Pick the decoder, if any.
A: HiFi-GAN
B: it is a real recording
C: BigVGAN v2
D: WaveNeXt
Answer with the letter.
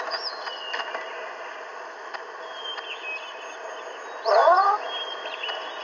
B